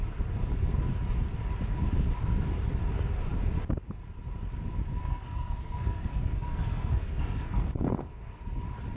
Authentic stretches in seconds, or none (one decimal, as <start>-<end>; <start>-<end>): 0.0-5.0; 8.4-9.0